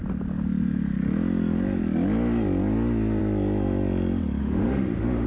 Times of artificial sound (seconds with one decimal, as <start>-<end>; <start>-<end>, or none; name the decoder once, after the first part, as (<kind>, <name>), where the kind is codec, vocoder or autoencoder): 4.4-5.3 (autoencoder, DAC-VAE)